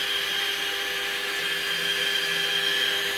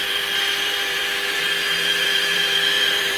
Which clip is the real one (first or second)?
first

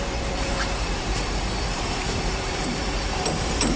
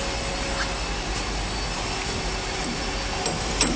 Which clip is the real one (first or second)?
second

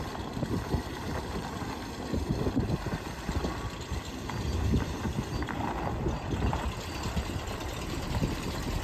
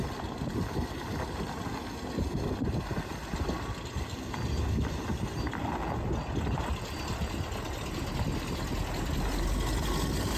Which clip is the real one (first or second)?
second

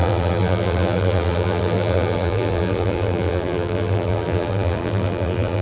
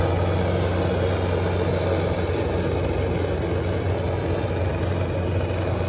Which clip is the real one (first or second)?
second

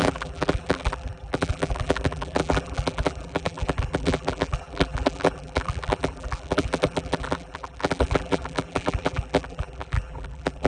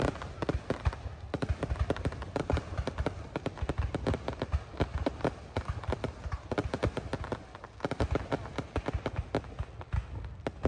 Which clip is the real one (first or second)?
second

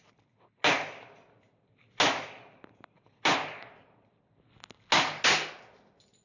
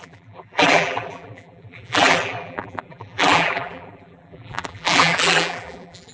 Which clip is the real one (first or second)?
first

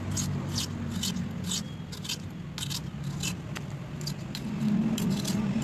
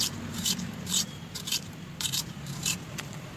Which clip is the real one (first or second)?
first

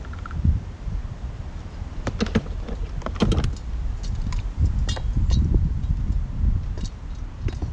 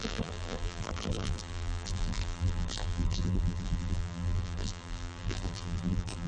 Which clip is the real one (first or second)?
first